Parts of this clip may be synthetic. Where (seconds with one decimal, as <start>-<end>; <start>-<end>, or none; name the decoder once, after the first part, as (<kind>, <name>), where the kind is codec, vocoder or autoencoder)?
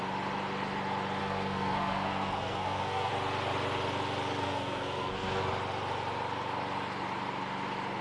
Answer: 1.2-3.1 (codec, SNAC); 4.4-5.5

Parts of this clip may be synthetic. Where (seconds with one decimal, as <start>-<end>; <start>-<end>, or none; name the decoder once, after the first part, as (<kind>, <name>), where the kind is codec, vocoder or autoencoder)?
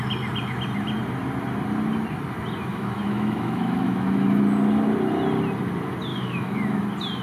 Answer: 2.7-4.4 (autoencoder, DAC-VAE); 6.1-6.8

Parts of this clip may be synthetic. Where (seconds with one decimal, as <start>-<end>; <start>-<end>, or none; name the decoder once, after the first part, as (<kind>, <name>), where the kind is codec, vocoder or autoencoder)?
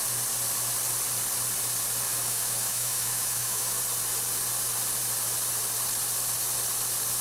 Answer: 2.1-3.8 (autoencoder, DAC-VAE)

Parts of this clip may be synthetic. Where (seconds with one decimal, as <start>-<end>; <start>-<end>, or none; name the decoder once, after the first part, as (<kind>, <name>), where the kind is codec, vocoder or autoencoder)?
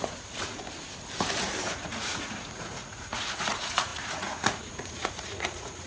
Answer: 0.0-0.6 (vocoder, Vocos); 1.6-5.9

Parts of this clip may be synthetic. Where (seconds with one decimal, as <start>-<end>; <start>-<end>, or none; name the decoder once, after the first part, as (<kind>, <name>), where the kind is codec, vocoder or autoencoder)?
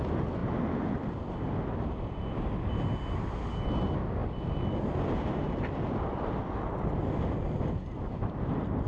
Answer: none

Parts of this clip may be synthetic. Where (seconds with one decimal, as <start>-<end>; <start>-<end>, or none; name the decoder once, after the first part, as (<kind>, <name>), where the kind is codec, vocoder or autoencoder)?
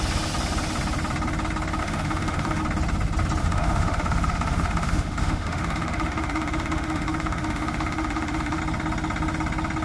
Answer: 1.8-2.6 (autoencoder, DAC-VAE); 3.4-8.6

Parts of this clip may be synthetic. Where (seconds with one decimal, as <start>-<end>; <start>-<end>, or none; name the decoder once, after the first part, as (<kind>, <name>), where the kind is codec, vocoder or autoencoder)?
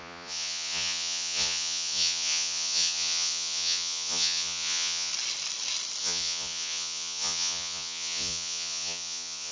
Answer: 0.0-5.1 (vocoder, Vocos); 6.0-9.5